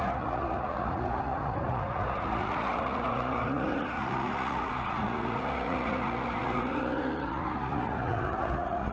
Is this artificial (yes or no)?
yes